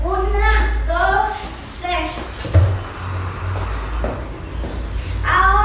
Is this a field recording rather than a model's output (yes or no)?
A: yes